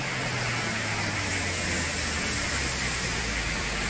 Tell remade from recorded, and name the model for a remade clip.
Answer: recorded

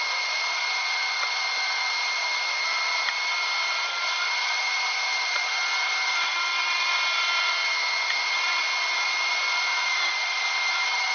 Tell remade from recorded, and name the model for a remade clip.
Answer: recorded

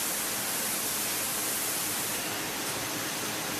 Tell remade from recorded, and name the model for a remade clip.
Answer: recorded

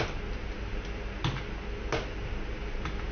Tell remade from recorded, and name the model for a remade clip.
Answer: recorded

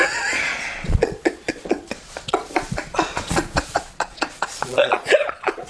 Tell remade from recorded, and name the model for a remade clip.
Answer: remade, vocoder, Vocos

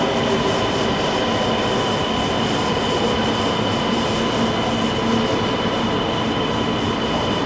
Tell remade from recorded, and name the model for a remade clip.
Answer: recorded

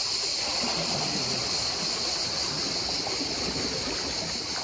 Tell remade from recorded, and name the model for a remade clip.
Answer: recorded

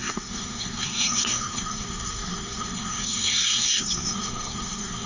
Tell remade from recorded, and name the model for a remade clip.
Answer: remade, codec, SNAC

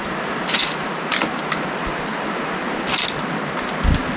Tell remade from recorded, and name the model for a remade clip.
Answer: recorded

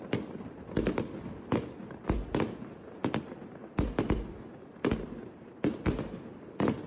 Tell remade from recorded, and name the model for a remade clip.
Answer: recorded